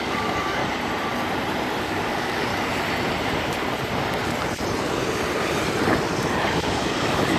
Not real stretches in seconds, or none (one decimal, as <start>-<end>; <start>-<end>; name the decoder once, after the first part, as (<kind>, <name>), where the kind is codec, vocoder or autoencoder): 0.0-0.6 (codec, DAC); 1.8-2.5; 6.6-7.4